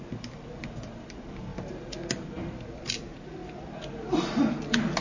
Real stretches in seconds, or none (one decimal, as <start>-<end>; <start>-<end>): 0.0-5.0